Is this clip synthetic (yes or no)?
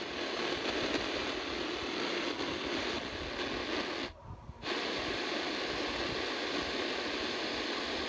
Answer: no